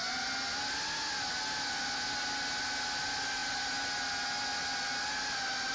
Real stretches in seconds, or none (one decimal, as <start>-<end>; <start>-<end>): 0.0-5.7